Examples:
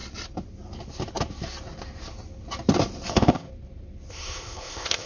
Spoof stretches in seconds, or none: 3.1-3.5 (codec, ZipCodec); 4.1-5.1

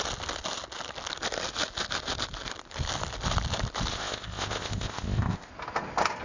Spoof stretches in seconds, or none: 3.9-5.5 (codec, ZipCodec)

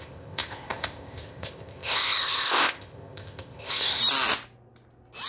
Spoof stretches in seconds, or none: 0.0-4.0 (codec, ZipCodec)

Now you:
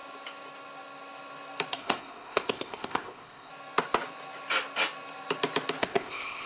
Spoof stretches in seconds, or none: 1.8-3.5 (codec, ZipCodec); 5.8-6.5

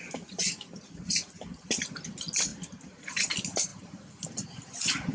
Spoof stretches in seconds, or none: none

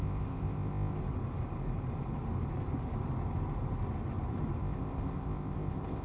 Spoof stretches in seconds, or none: 0.0-1.0 (codec, ZipCodec); 4.6-6.0

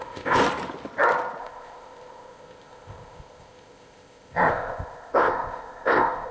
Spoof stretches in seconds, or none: 0.0-0.4 (codec, ZipCodec); 1.4-6.3

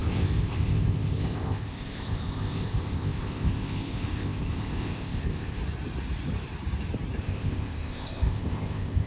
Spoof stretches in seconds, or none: 0.0-5.6 (codec, ZipCodec); 7.2-9.1